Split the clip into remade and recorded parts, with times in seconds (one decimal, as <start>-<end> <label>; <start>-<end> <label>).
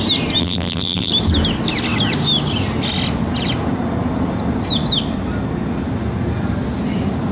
0.0-0.4 recorded; 0.4-1.1 remade; 1.1-7.3 recorded